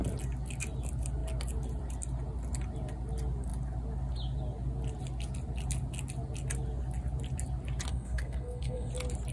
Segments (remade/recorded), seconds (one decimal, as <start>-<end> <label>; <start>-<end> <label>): 0.0-7.9 recorded; 7.9-8.9 remade; 8.9-9.3 recorded